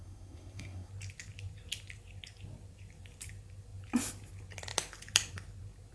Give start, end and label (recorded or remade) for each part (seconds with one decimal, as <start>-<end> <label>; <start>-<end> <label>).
0.0-0.9 remade; 0.9-5.9 recorded

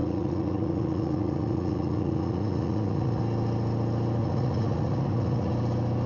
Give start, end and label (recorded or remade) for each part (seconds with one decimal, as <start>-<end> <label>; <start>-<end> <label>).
0.0-3.2 remade; 3.2-4.2 recorded; 4.2-5.5 remade; 5.5-6.1 recorded

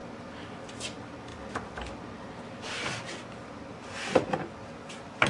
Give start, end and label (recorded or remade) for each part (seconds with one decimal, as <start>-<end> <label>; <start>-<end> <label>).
0.0-5.3 recorded

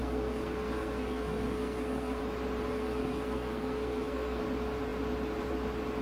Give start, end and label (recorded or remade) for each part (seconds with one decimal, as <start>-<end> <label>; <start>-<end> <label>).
0.0-2.2 remade; 2.2-2.7 recorded; 2.7-4.4 remade; 4.4-6.0 recorded

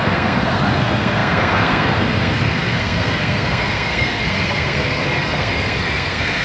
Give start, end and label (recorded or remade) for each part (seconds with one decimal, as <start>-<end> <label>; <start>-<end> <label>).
0.0-6.4 remade

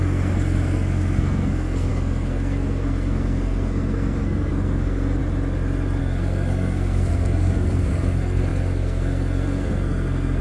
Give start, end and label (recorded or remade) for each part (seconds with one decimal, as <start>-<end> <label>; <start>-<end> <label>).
0.0-5.2 remade; 5.2-6.0 recorded; 6.0-10.4 remade